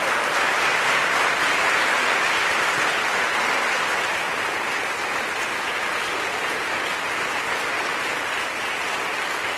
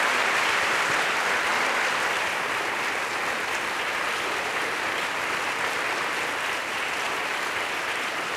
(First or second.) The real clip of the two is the first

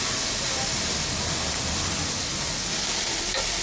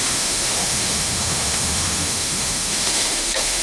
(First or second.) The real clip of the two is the first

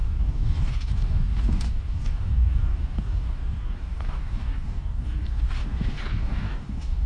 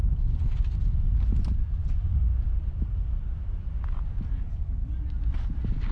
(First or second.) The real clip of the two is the second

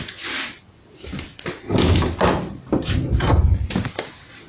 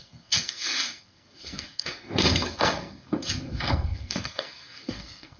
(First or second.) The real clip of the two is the first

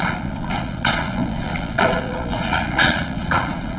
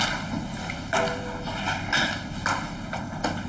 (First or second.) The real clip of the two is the second